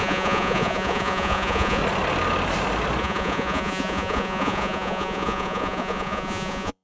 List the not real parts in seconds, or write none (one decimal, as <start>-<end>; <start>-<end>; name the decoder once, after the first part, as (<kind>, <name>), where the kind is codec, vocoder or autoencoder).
0.0-1.8 (vocoder, Vocos); 3.0-6.8